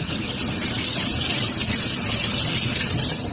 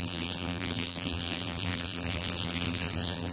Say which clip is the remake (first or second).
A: second